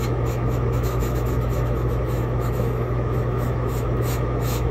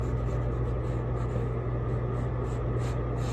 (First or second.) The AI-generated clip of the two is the first